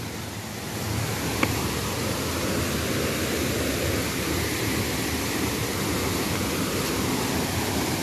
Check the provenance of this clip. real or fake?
real